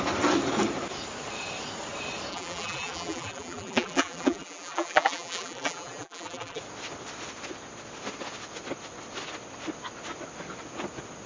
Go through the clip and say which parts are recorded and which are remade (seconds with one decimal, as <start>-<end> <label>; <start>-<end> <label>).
0.0-2.3 recorded; 2.3-6.6 remade; 6.6-11.3 recorded